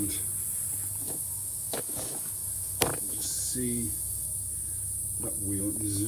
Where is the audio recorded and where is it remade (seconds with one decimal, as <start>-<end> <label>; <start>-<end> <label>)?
0.0-1.0 recorded; 1.0-5.0 remade; 5.0-5.6 recorded; 5.6-6.1 remade